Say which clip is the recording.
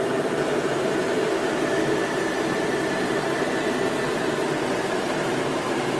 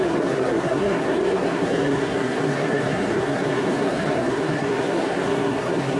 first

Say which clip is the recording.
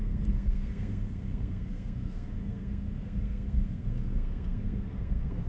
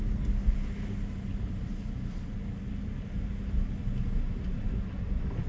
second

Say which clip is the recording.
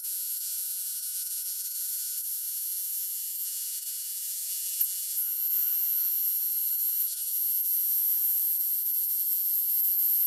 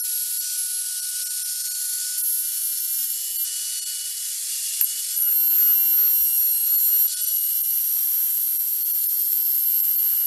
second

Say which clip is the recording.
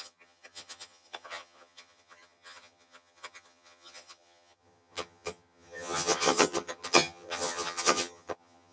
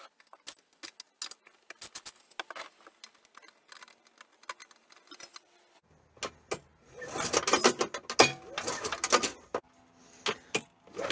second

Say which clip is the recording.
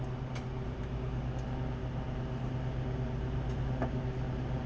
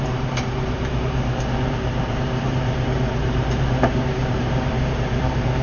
first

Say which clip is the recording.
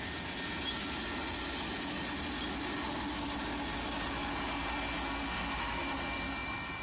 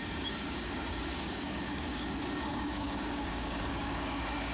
first